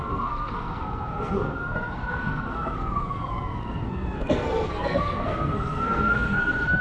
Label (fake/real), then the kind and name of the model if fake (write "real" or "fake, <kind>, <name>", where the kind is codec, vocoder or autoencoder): fake, codec, SNAC